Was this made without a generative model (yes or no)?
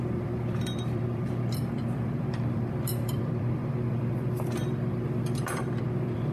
no